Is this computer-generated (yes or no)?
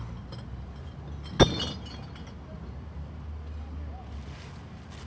no